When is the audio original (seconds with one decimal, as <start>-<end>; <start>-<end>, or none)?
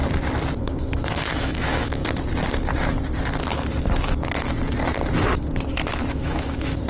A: 0.0-0.6; 2.0-6.1